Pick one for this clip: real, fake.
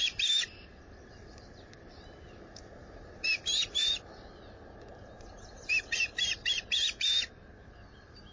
fake